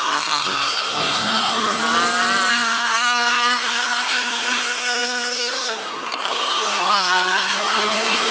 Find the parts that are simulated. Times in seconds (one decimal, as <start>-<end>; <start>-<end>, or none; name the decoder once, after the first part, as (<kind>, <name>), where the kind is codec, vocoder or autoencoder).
0.0-1.8 (codec, SNAC); 2.5-8.3